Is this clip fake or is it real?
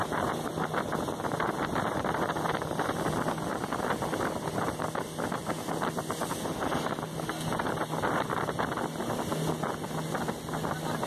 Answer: real